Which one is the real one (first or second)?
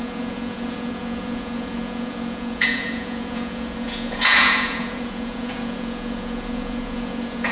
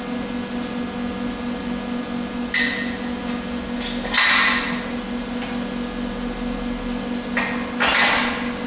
second